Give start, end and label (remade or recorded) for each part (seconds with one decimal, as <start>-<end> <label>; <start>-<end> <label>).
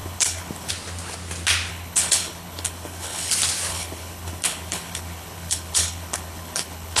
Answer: 0.0-0.7 remade; 0.7-1.7 recorded; 1.7-3.3 remade; 3.3-3.7 recorded; 3.7-7.0 remade